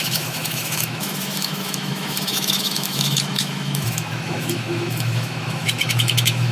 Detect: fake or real fake